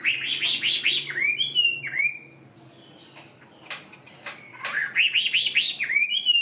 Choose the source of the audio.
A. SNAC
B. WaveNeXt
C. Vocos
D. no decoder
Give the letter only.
D